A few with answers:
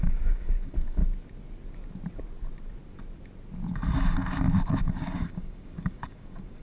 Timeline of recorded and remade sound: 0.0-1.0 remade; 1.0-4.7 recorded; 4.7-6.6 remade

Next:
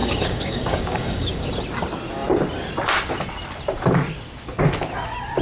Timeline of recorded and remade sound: 0.0-1.5 remade; 1.5-5.4 recorded